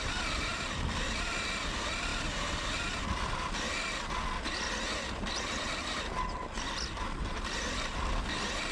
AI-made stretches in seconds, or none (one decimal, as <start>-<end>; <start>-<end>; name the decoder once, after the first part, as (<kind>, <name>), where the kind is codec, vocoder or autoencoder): 0.0-2.1 (vocoder, BigVGAN v2); 7.2-8.7